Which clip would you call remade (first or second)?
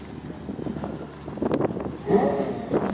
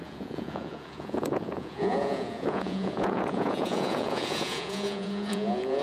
second